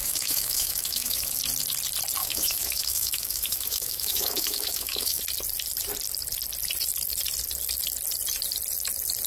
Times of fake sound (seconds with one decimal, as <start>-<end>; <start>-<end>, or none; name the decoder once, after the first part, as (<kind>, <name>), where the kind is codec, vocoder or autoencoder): 0.0-1.4 (autoencoder, DAC-VAE); 2.2-5.2